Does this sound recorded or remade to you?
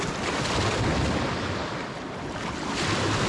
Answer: recorded